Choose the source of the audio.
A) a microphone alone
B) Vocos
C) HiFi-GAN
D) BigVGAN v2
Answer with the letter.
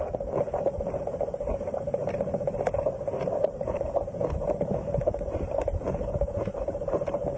A